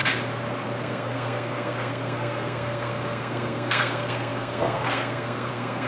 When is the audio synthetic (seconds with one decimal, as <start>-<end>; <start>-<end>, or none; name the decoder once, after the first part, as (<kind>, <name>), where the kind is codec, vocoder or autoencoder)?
0.8-5.9 (codec, SNAC)